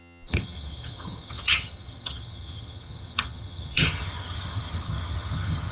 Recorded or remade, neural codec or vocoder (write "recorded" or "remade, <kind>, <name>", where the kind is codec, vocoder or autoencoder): remade, vocoder, HiFi-GAN